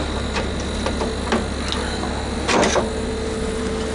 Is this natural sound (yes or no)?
yes